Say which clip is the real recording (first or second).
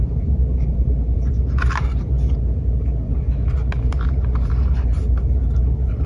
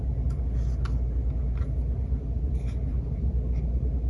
second